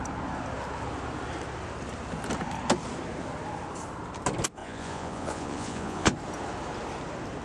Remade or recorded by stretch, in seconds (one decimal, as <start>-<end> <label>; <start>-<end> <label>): 0.0-4.6 recorded; 4.6-6.1 remade; 6.1-7.4 recorded